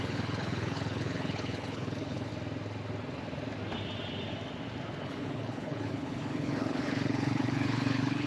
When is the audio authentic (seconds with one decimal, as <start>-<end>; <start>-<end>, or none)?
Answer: 2.3-5.0